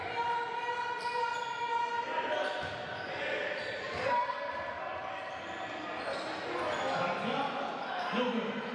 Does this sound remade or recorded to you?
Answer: recorded